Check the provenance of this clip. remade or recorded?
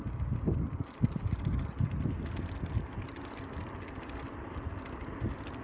recorded